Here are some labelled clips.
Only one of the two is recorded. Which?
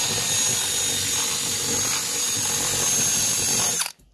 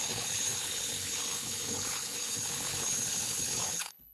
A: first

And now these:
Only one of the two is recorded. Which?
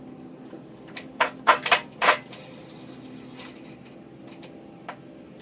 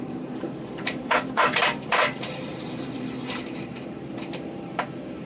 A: first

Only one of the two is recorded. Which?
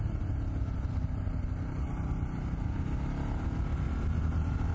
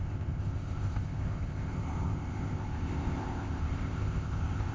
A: first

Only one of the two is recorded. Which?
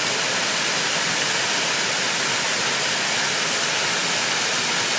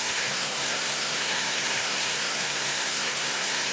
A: first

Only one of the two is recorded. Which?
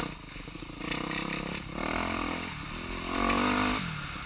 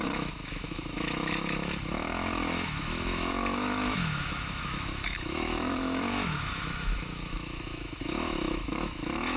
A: first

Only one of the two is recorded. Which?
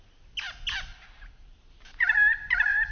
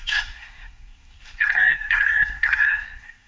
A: first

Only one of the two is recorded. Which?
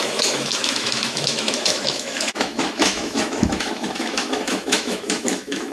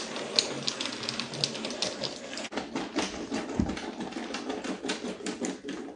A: second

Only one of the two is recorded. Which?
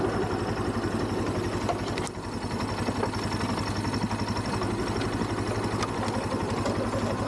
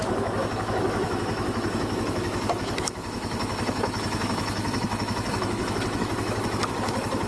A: first